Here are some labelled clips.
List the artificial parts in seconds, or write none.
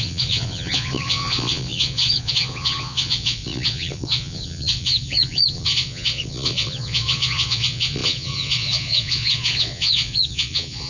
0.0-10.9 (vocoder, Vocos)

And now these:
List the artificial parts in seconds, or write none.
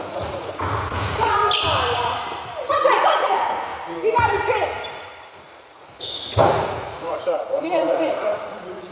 0.0-1.4 (vocoder, Vocos); 2.7-3.7; 5.2-8.9